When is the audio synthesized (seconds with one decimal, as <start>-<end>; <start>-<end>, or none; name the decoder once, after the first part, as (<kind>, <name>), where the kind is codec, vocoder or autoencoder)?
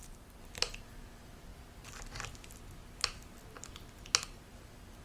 0.0-1.5 (vocoder, BigVGAN v2); 4.5-5.0